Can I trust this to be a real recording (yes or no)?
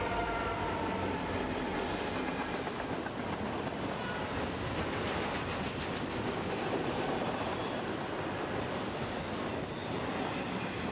no